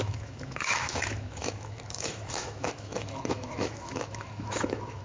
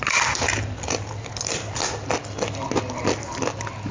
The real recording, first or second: second